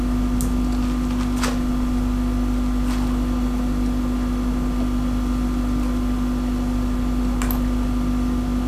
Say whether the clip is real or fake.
real